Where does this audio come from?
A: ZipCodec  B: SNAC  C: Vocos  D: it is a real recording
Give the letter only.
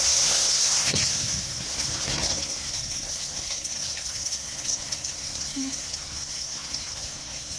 B